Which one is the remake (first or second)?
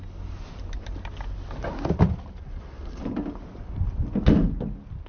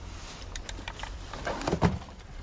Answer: second